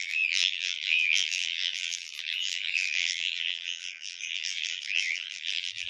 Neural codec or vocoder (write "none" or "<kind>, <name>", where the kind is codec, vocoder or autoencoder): vocoder, BigVGAN v2